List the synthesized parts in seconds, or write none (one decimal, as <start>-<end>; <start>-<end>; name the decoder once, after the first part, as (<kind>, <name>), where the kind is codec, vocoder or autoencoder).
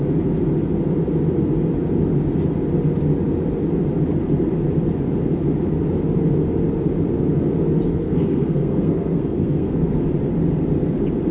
7.9-10.0 (codec, SNAC)